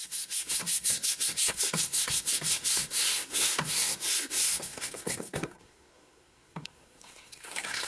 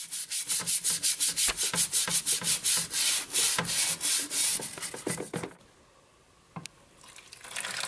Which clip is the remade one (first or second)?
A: first